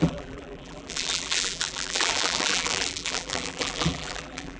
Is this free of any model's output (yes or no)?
no